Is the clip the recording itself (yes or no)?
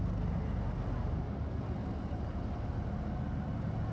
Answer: yes